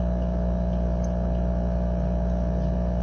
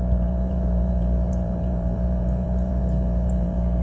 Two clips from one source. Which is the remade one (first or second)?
second